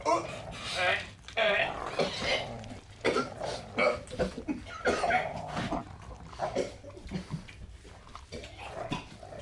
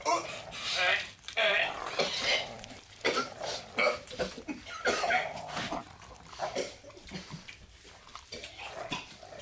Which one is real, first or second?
first